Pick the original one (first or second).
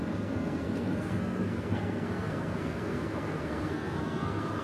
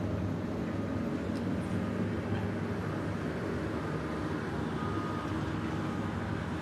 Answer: second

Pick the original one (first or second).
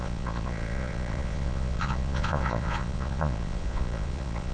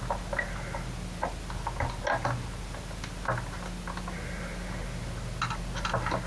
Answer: second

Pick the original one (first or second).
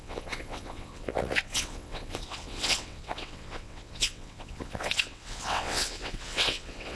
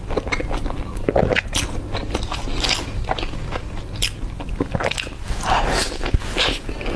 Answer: second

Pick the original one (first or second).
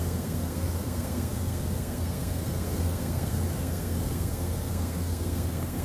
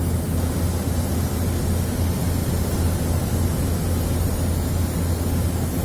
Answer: second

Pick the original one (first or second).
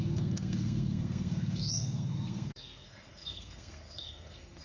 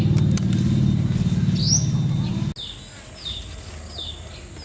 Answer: second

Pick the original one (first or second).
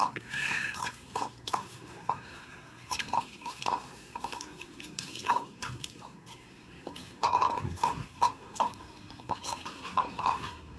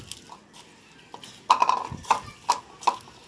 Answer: second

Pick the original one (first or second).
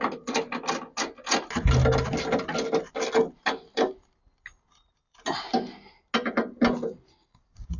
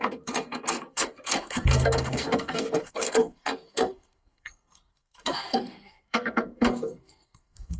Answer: first